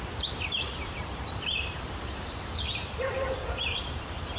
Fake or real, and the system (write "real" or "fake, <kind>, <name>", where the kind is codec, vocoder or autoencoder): fake, vocoder, BigVGAN v2